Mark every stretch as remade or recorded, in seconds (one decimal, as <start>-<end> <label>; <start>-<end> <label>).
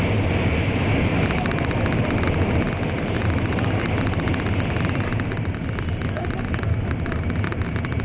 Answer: 0.0-1.1 recorded; 1.1-2.8 remade; 2.8-3.2 recorded; 3.2-5.5 remade; 5.5-8.0 recorded